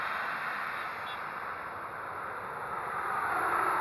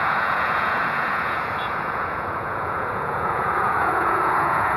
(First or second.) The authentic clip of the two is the first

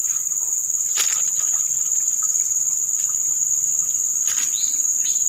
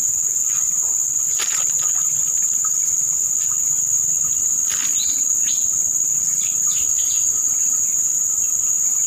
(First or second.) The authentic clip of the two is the first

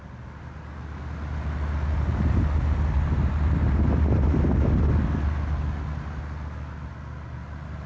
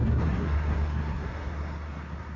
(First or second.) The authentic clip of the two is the first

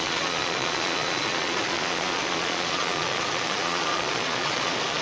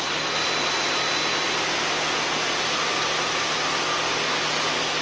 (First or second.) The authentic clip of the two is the second